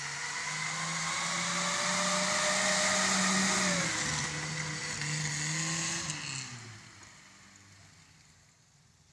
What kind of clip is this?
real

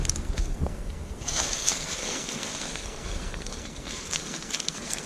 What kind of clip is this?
fake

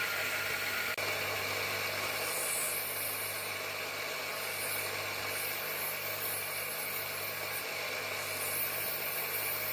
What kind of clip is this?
real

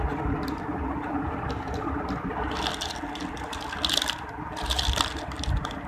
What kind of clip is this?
real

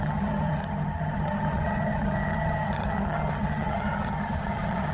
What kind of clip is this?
fake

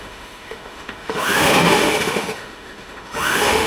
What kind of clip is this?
fake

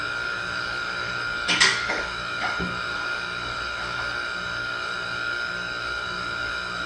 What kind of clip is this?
fake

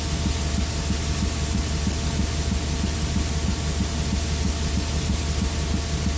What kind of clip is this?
real